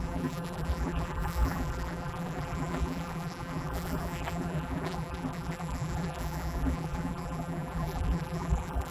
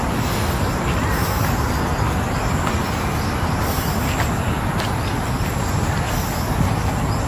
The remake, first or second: first